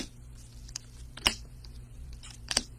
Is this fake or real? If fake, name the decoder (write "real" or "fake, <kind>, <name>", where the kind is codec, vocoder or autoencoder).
fake, vocoder, BigVGAN v2